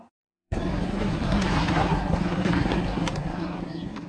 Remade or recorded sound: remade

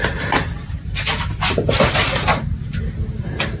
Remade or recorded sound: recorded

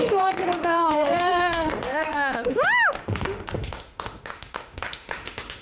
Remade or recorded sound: remade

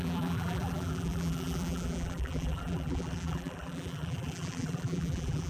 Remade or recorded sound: remade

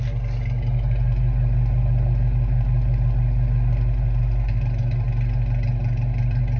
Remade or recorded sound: recorded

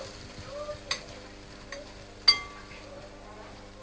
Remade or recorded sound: recorded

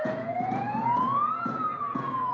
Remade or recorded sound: remade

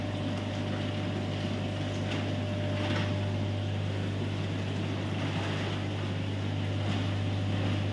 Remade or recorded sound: recorded